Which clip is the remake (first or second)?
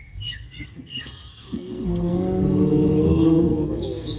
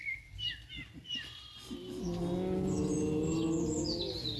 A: first